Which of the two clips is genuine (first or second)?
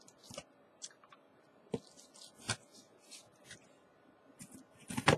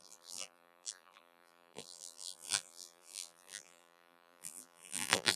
first